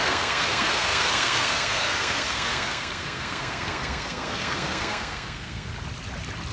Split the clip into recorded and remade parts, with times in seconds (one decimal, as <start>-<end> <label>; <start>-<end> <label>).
0.0-5.7 remade; 5.7-6.5 recorded